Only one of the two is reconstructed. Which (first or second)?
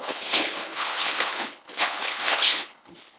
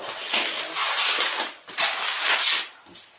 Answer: first